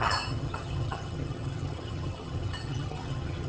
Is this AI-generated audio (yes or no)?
yes